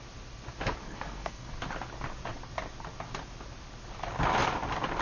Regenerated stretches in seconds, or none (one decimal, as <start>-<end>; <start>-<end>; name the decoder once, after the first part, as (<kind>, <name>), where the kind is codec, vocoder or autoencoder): 0.8-1.5 (codec, SNAC)